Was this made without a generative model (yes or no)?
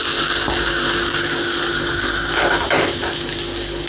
yes